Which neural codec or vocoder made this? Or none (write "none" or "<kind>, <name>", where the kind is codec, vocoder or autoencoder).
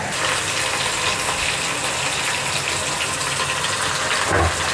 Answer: none